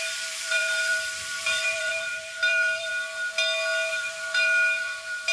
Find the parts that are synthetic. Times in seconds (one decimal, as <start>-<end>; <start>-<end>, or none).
0.0-2.9; 3.9-5.3